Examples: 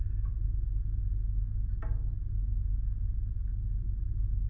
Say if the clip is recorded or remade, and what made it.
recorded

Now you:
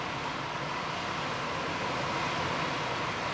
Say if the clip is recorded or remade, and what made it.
recorded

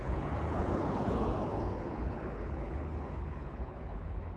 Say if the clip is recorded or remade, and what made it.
remade, codec, HILCodec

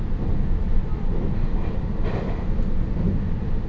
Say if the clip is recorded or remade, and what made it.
recorded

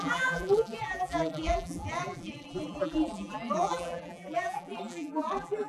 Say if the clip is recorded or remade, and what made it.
remade, vocoder, BigVGAN v2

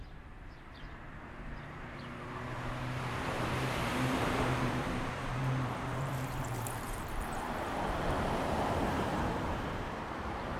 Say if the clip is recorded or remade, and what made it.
remade, vocoder, BigVGAN v2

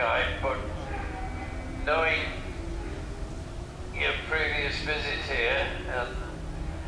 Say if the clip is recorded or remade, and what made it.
recorded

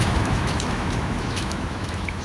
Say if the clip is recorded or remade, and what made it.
remade, autoencoder, DAC-VAE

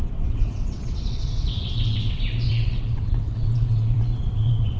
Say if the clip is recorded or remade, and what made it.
remade, vocoder, WaveNeXt